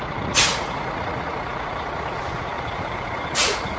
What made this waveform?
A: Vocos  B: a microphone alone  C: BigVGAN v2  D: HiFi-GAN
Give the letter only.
A